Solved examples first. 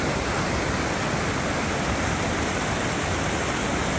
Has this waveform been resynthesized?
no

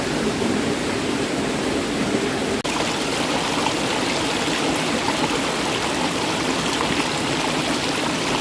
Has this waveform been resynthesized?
no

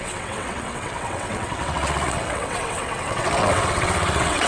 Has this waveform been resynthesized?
yes